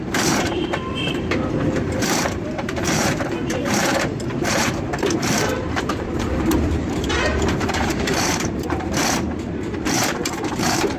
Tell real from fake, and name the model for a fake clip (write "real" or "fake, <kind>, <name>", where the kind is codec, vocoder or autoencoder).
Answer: fake, vocoder, BigVGAN v2